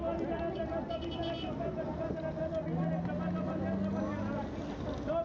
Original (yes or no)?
yes